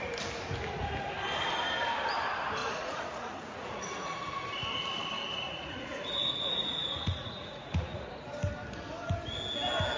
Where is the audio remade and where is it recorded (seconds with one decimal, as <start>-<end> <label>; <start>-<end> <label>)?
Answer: 0.0-2.6 recorded; 2.6-4.4 remade; 4.4-5.3 recorded; 5.3-8.1 remade; 8.1-10.0 recorded